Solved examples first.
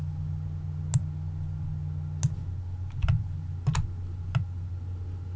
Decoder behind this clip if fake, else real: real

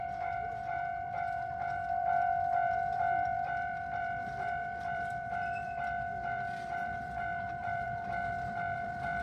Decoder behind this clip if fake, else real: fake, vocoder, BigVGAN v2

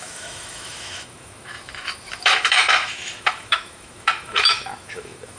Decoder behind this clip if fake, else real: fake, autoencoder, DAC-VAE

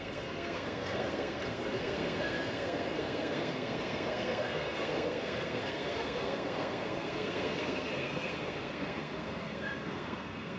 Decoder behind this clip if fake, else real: fake, codec, SNAC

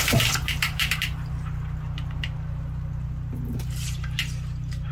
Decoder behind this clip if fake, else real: fake, vocoder, BigVGAN v2